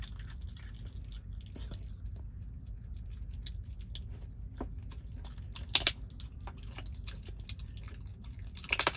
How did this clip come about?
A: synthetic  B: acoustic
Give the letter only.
B